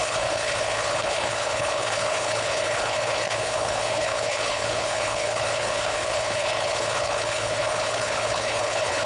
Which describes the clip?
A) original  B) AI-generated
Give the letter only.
B